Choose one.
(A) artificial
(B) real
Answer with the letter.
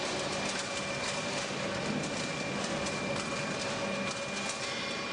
B